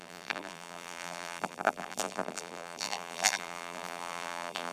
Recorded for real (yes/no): no